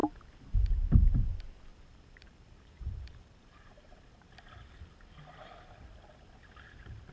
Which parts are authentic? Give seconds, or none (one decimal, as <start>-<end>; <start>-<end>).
0.0-1.7; 4.3-7.1